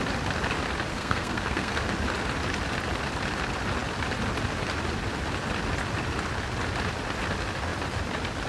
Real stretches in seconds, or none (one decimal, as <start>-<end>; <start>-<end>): 0.0-0.9; 1.8-8.5